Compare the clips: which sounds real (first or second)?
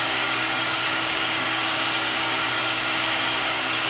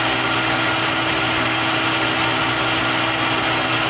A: second